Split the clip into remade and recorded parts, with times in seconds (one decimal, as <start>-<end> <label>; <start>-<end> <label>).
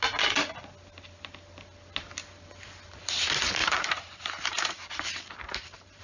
0.0-3.6 recorded; 3.6-6.0 remade